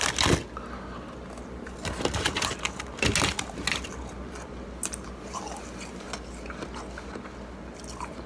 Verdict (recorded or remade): recorded